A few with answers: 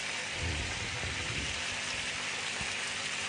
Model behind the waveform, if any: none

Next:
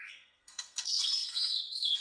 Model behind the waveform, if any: codec, SNAC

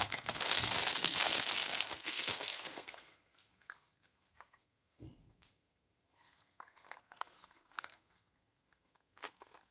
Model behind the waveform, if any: codec, SNAC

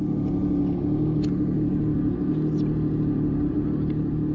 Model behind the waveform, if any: none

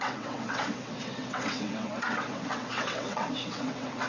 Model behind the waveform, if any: vocoder, WaveNeXt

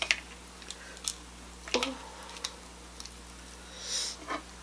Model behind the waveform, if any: none